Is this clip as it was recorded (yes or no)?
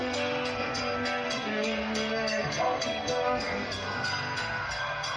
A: no